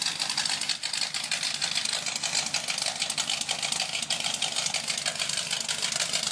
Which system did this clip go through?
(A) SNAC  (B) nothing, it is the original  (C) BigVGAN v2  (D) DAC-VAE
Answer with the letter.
C